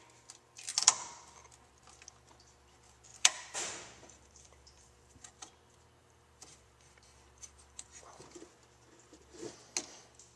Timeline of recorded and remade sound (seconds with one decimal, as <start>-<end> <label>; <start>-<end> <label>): 0.0-3.1 recorded; 3.1-5.3 remade; 5.3-6.0 recorded; 6.0-8.0 remade; 8.0-10.4 recorded